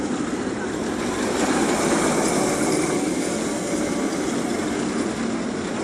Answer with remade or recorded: recorded